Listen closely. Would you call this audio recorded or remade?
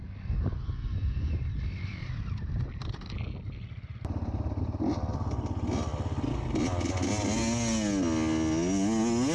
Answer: recorded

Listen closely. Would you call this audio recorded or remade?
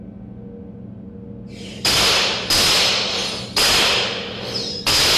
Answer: recorded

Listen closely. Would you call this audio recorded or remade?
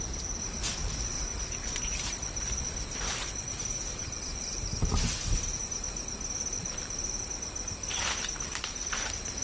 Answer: remade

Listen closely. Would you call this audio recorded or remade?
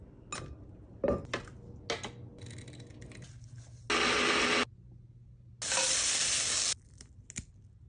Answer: recorded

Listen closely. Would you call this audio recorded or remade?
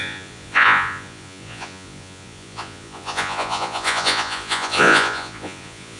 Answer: remade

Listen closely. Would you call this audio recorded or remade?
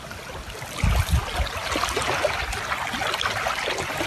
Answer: recorded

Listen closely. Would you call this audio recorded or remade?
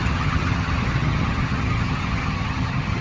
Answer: remade